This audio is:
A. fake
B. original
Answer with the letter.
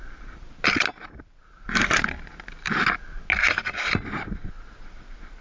B